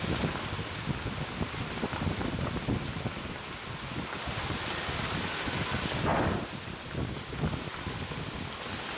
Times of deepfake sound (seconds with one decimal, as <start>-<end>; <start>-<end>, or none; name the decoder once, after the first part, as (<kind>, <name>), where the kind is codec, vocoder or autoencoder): 6.1-7.1 (vocoder, BigVGAN v2)